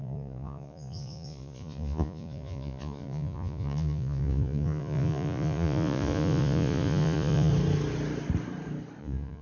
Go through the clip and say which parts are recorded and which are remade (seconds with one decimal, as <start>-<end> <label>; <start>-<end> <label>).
0.0-7.5 remade; 7.5-9.0 recorded; 9.0-9.4 remade